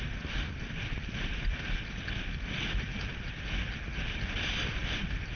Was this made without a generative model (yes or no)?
yes